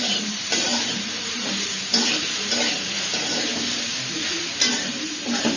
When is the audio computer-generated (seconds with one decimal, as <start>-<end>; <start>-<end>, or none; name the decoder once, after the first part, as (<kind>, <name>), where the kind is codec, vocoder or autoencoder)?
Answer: 0.0-3.5 (vocoder, BigVGAN v2); 4.1-5.6